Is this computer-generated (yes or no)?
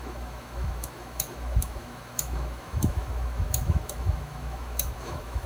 yes